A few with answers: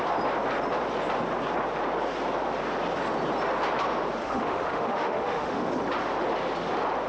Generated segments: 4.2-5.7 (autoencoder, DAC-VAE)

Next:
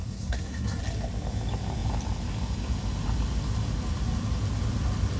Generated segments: 0.0-0.8 (codec, SNAC)

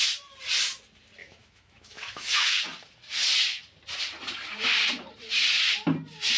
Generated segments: 1.2-2.6 (autoencoder, DAC-VAE)

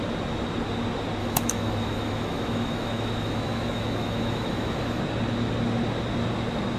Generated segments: 1.2-5.0 (autoencoder, DAC-VAE)

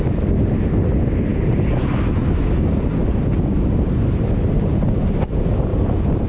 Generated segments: 1.3-1.8 (codec, DAC); 2.2-3.8

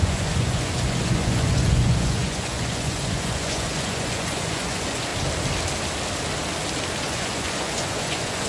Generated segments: 0.0-5.1 (vocoder, Vocos); 7.0-8.5

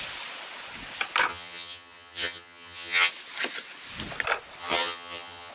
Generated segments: 1.3-3.1 (vocoder, HiFi-GAN); 4.6-5.5

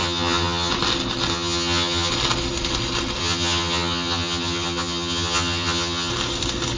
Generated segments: 0.0-0.7 (vocoder, HiFi-GAN); 1.3-2.1; 3.2-6.1